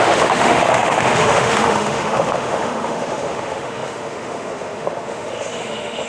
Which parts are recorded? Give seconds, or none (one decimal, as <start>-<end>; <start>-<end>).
none